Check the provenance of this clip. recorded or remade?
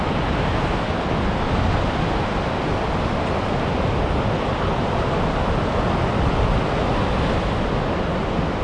recorded